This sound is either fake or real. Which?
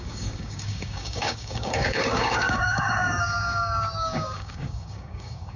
fake